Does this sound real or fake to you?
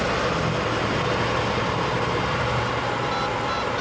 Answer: real